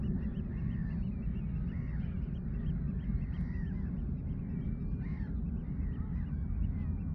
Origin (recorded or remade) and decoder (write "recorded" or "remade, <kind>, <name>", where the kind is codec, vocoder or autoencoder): recorded